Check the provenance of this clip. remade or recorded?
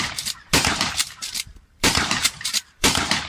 remade